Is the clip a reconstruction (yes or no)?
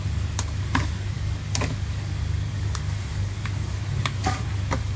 yes